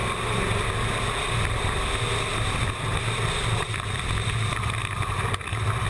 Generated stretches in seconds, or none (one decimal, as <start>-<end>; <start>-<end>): none